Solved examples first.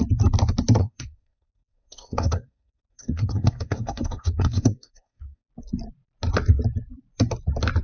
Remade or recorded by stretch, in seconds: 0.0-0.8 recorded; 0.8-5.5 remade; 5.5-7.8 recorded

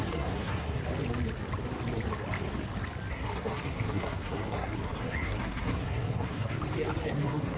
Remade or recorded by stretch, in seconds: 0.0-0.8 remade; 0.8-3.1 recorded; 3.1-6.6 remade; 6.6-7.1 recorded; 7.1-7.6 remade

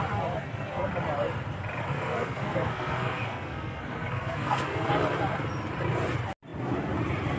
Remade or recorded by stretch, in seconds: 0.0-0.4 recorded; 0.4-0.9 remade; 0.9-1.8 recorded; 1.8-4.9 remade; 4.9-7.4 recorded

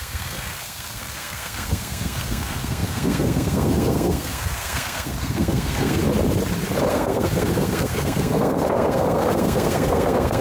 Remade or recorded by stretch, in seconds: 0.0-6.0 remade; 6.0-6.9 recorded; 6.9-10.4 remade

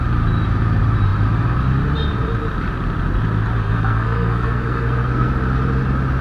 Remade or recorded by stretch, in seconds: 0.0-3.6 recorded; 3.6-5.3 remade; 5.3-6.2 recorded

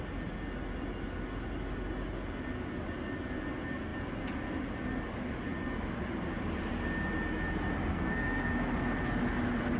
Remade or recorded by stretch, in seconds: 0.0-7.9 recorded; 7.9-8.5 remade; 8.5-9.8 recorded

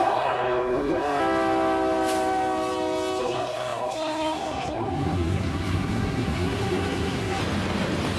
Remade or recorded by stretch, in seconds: 0.0-1.2 remade; 1.2-3.2 recorded; 3.2-7.4 remade; 7.4-8.2 recorded

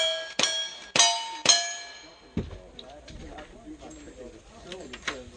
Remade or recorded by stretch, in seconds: 0.0-5.4 recorded